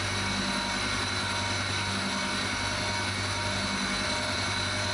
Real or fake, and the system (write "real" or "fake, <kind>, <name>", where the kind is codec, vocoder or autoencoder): real